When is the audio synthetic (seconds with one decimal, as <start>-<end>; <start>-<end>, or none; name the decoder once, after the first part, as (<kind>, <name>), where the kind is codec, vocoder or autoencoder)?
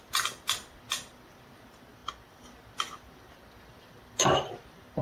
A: none